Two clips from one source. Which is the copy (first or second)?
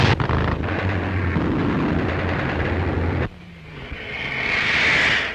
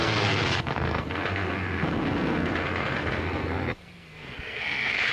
second